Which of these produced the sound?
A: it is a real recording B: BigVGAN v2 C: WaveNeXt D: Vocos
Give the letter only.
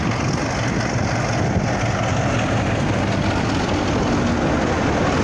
A